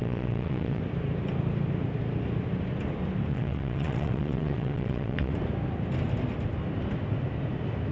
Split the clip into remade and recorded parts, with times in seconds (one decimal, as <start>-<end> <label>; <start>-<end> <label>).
0.0-0.8 remade; 0.8-3.3 recorded; 3.3-5.3 remade; 5.3-7.9 recorded